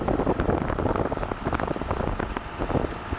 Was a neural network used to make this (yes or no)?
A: no